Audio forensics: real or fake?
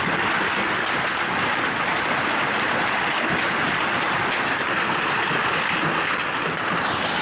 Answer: real